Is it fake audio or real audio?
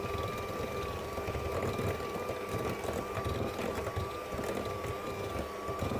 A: real